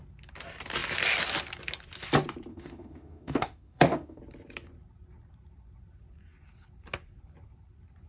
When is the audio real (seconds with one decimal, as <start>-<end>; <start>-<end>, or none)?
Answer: 0.0-2.5; 4.2-8.1